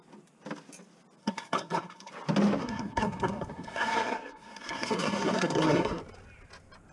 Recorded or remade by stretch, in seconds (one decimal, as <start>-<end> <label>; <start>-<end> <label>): 0.0-1.2 recorded; 1.2-2.1 remade; 2.1-2.6 recorded; 2.6-6.0 remade; 6.0-6.9 recorded